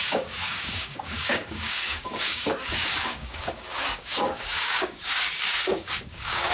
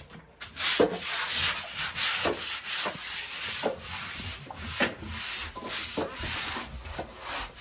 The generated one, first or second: first